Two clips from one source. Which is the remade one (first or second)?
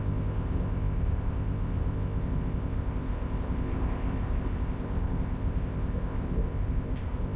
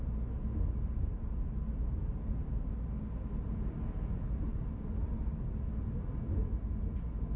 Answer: first